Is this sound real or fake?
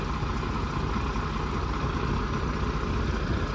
real